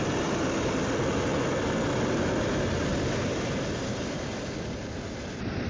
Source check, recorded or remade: recorded